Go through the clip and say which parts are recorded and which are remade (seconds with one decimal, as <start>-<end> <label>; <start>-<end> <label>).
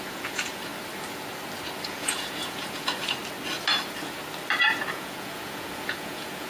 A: 0.0-0.7 remade; 0.7-1.8 recorded; 1.8-3.2 remade; 3.2-4.9 recorded; 4.9-6.5 remade